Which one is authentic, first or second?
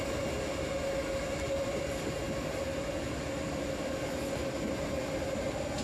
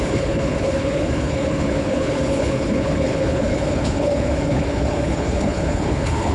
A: first